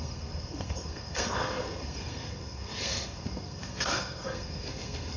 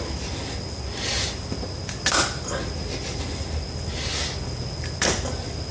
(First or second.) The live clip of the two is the second